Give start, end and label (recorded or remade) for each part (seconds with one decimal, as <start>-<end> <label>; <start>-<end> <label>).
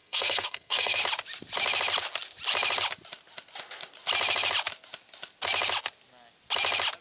0.0-1.0 remade; 1.0-7.0 recorded